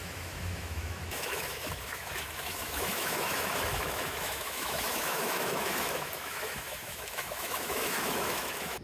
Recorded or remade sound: remade